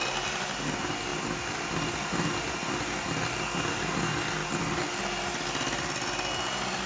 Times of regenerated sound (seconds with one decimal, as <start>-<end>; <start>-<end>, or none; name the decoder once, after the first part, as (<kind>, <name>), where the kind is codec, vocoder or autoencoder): none